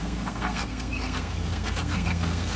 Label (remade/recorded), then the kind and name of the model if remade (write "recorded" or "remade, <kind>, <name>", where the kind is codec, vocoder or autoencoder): remade, codec, SNAC